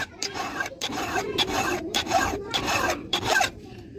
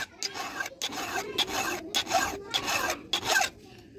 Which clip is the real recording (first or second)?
second